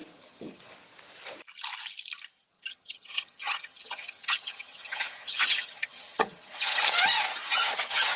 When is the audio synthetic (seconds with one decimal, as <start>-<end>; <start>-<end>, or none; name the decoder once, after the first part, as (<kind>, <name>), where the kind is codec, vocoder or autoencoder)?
0.0-0.6 (vocoder, HiFi-GAN); 2.5-6.8; 7.3-8.2